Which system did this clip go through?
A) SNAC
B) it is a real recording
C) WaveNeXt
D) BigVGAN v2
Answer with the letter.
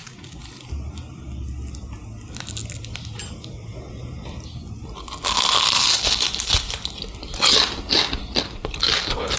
B